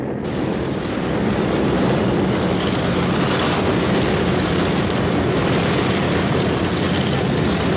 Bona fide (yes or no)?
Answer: yes